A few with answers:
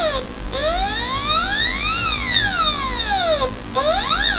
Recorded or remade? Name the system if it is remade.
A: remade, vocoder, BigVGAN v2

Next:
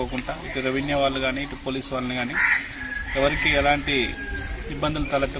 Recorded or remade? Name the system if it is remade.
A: recorded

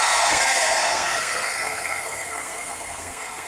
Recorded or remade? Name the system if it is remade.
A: remade, codec, SNAC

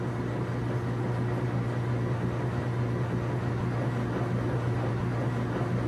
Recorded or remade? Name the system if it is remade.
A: recorded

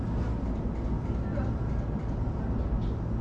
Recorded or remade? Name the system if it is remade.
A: recorded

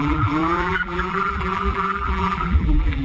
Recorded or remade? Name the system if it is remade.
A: remade, vocoder, BigVGAN v2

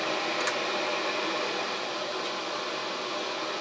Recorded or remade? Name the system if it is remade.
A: recorded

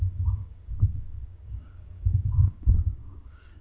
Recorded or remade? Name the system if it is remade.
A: remade, codec, DAC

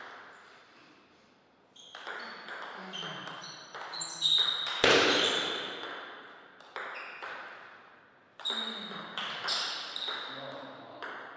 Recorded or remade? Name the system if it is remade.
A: recorded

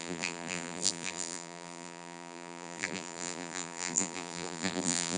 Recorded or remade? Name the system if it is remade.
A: remade, vocoder, BigVGAN v2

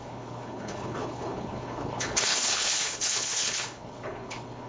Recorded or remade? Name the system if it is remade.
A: remade, codec, HILCodec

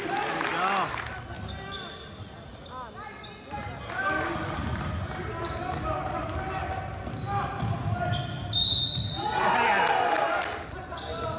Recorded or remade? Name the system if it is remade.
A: recorded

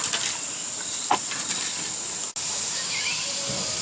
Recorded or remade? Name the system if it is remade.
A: recorded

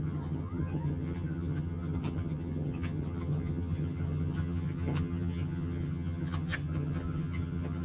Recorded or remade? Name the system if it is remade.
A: remade, vocoder, HiFi-GAN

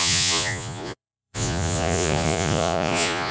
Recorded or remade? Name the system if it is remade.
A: remade, vocoder, Vocos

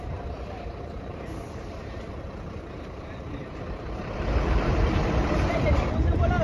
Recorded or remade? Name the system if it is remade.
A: remade, vocoder, BigVGAN v2